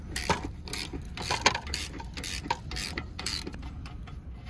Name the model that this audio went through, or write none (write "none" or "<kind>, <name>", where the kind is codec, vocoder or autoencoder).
none